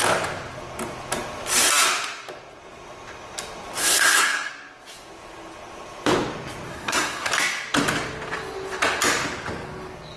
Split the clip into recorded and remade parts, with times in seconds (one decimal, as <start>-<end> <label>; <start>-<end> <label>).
0.0-3.8 recorded; 3.8-4.5 remade; 4.5-6.7 recorded; 6.7-7.3 remade; 7.3-10.2 recorded